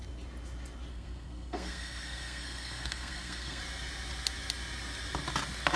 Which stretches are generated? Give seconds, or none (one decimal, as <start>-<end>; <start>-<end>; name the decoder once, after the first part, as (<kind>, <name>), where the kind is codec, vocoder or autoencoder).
0.9-3.6 (codec, SNAC)